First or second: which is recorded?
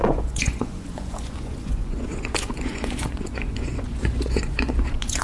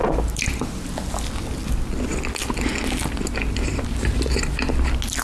second